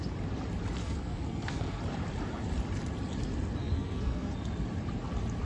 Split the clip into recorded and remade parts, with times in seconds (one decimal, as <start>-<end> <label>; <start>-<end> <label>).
0.0-0.8 recorded; 0.8-1.8 remade; 1.8-3.6 recorded; 3.6-4.3 remade; 4.3-5.5 recorded